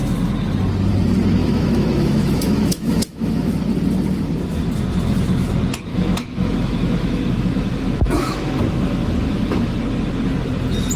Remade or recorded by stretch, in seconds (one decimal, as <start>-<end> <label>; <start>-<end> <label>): 0.0-1.4 recorded; 1.4-3.6 remade; 3.6-5.9 recorded; 5.9-9.8 remade; 9.8-11.0 recorded